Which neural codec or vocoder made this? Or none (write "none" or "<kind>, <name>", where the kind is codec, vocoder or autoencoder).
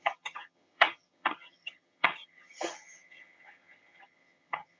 vocoder, HiFi-GAN